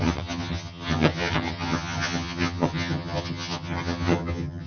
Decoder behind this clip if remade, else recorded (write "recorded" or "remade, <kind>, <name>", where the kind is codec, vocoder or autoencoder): remade, vocoder, HiFi-GAN